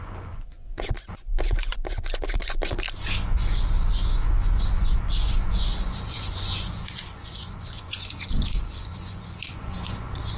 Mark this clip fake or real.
fake